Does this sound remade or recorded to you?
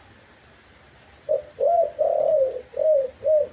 recorded